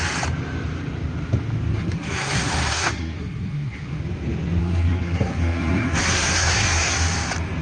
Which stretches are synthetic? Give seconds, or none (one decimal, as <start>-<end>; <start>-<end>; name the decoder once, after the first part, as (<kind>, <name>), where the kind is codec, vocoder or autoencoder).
1.7-4.0 (codec, SNAC); 4.6-6.9